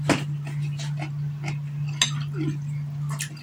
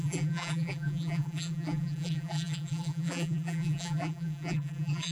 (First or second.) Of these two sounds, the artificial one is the second